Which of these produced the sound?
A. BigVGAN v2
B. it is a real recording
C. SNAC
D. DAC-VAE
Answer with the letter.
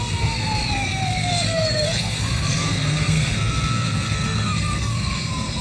C